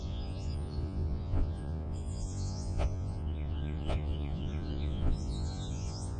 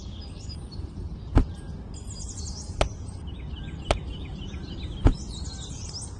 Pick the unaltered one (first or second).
second